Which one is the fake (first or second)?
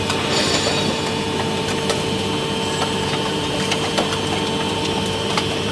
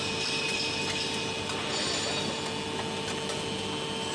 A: first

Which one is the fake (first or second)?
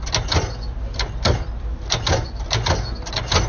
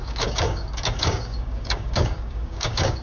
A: second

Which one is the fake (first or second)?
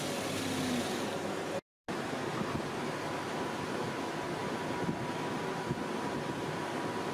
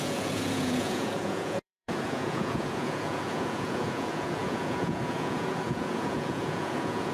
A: second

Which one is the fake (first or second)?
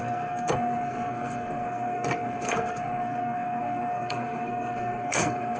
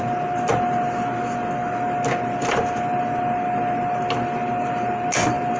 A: first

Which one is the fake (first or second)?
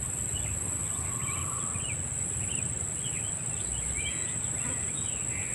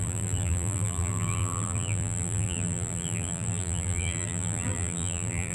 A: second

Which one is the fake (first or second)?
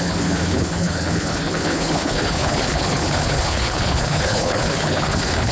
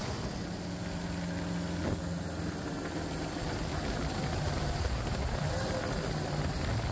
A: first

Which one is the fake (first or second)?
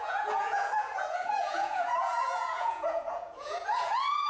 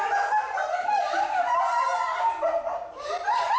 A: first